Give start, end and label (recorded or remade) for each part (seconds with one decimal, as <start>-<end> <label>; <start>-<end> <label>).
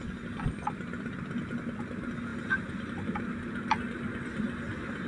0.0-2.3 recorded; 2.3-3.2 remade; 3.2-5.1 recorded